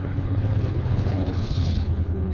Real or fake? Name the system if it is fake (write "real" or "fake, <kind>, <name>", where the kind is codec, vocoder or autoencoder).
fake, codec, HILCodec